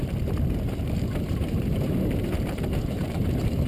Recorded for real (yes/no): no